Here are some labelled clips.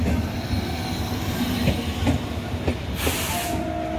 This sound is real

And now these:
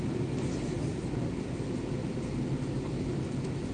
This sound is real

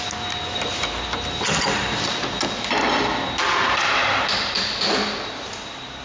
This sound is real